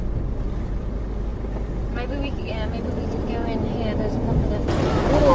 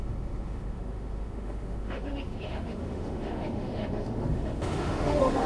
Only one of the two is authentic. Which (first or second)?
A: first